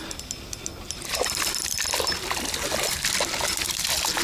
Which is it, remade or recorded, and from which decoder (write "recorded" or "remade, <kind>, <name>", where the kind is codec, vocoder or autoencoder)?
recorded